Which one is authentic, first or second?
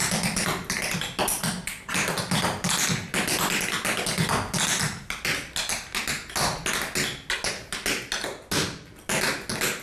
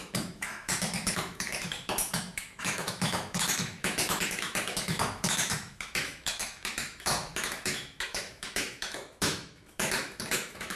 first